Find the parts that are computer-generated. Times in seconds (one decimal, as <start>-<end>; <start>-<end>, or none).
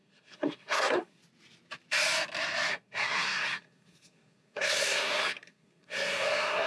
0.0-1.2; 2.7-6.7